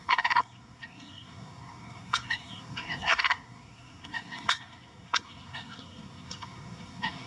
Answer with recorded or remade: remade